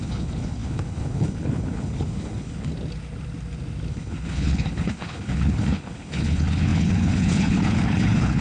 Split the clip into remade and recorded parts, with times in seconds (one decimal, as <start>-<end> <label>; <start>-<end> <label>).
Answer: 0.0-2.7 remade; 2.7-3.9 recorded; 3.9-8.4 remade